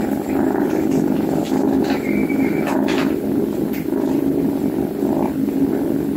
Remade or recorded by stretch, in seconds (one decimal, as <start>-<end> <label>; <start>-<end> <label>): 0.0-6.2 recorded